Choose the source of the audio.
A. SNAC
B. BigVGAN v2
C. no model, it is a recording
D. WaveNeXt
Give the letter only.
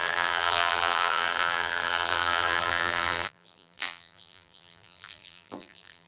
B